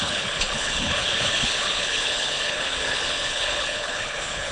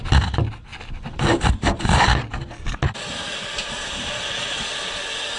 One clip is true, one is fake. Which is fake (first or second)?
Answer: first